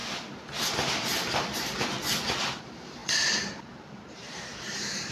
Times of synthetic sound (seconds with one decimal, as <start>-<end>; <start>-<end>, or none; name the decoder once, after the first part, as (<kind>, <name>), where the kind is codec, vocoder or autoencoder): 2.6-5.1 (vocoder, BigVGAN v2)